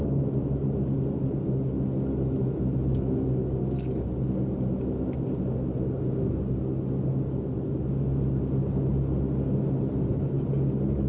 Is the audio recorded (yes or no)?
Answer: yes